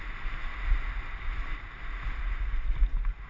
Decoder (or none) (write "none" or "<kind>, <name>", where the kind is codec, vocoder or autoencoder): none